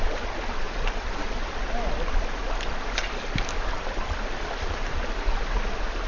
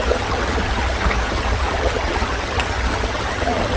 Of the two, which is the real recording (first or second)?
first